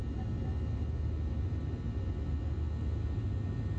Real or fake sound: real